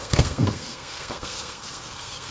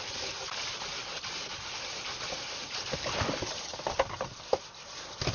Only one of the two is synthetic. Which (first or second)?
first